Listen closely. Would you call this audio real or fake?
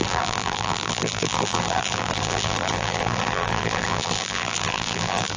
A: fake